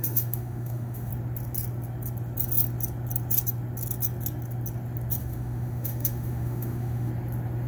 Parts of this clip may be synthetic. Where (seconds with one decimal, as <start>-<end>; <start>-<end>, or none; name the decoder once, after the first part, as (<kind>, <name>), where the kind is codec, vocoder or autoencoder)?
0.0-1.1 (autoencoder, DAC-VAE); 5.2-7.1